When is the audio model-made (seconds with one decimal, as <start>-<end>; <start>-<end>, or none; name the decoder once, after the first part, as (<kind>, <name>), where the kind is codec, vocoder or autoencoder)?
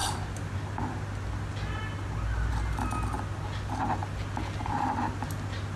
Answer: none